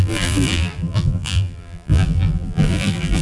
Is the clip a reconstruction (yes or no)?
yes